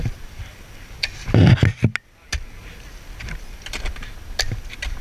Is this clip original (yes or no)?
yes